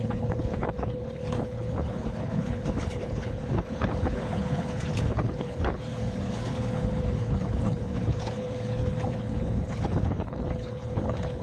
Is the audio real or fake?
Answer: fake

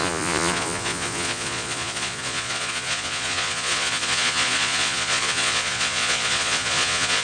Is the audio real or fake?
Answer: fake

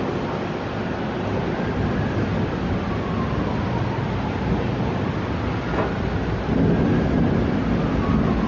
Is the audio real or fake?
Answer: real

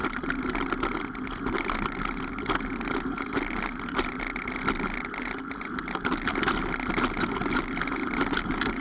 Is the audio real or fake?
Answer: real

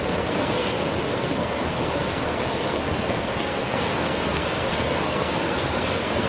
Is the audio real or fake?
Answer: fake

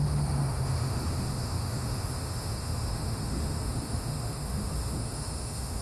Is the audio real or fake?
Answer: fake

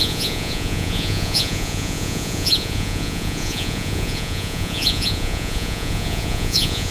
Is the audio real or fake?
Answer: fake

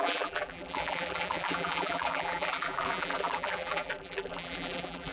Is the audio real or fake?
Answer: fake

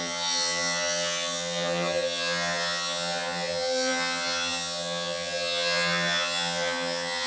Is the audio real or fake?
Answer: fake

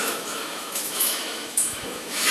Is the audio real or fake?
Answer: fake